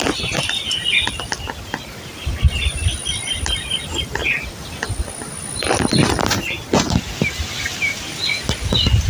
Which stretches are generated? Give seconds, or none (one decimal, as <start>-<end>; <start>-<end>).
none